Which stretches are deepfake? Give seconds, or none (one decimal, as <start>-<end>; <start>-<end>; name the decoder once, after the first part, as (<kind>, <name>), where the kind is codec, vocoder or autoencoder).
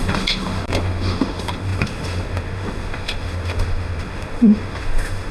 0.0-5.3 (autoencoder, DAC-VAE)